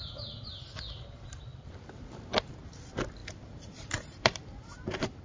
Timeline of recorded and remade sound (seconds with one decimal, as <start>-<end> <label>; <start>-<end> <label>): 0.0-3.2 recorded; 3.2-5.2 remade